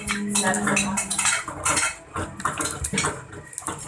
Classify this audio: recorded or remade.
recorded